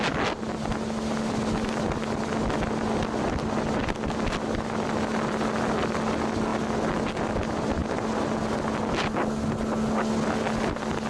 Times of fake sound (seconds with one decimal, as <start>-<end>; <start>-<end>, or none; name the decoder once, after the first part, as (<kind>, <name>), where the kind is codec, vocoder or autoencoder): none